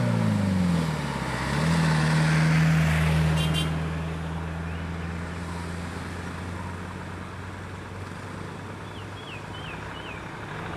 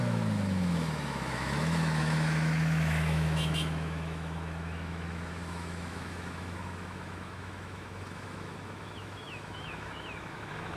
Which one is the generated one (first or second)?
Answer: second